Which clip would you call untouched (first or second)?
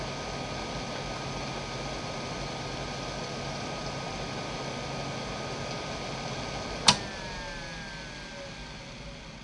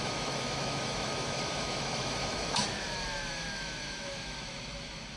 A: first